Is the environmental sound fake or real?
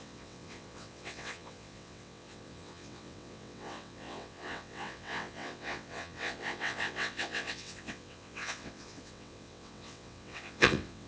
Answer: fake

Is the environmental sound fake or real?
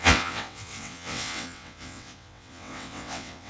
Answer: fake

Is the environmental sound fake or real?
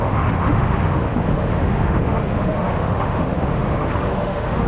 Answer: fake